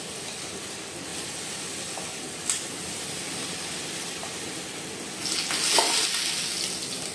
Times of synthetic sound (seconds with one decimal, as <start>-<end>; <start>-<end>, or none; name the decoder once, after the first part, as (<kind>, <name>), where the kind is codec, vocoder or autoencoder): none